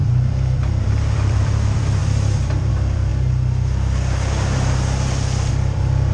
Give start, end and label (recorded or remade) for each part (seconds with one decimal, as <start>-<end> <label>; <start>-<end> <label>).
0.0-3.1 remade; 3.1-5.5 recorded; 5.5-6.1 remade